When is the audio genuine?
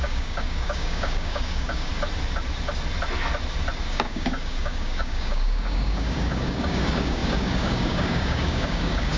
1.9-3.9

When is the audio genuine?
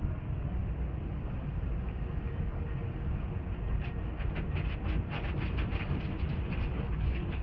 0.6-2.3; 2.7-6.7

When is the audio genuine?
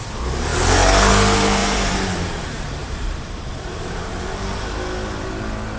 0.0-1.6; 4.6-5.8